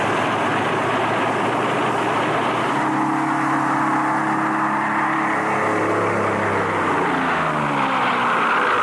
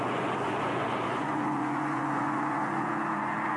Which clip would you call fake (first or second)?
second